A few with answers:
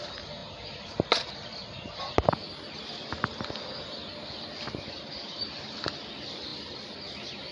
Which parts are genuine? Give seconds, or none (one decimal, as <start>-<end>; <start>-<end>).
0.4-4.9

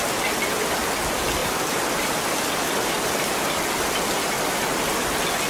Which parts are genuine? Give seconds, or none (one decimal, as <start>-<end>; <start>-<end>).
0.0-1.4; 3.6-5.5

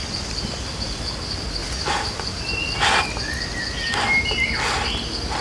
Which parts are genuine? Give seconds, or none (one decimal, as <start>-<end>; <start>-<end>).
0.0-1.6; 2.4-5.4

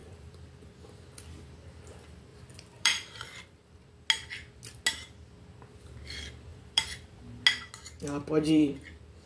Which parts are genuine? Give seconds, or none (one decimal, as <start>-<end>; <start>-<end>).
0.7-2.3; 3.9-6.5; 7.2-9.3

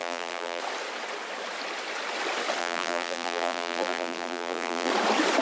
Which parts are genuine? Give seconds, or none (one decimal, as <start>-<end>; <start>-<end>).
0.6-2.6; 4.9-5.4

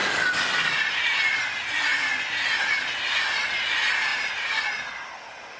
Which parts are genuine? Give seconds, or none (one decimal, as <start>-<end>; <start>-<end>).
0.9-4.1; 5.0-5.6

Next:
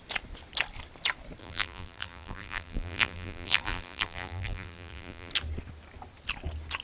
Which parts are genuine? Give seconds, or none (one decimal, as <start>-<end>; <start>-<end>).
0.0-1.4; 5.3-6.8

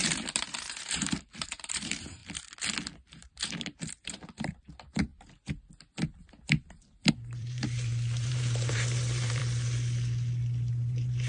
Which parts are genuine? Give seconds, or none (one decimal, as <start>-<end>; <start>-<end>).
2.2-3.2; 5.1-7.1; 9.4-10.7